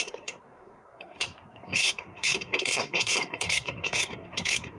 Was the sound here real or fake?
fake